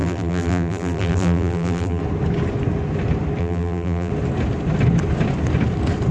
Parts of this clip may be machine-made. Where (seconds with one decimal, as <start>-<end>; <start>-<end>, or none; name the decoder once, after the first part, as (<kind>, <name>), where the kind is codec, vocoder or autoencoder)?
0.0-2.0 (vocoder, BigVGAN v2); 3.4-4.1